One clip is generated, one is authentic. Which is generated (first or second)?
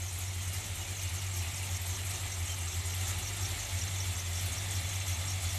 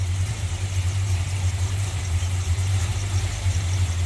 second